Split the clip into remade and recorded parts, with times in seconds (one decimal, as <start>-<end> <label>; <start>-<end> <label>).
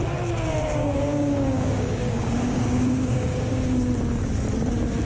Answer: 0.0-0.8 recorded; 0.8-3.9 remade; 3.9-5.1 recorded